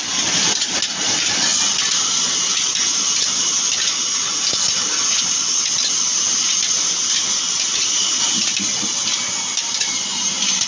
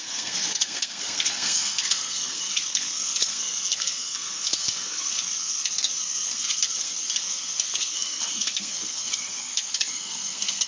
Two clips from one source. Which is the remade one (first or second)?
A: second